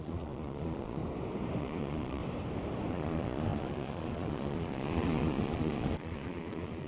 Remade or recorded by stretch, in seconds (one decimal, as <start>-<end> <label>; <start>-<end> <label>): 0.0-1.0 remade; 1.0-1.6 recorded; 1.6-2.2 remade; 2.2-2.9 recorded; 2.9-6.9 remade